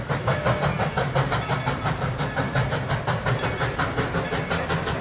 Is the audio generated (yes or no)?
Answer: no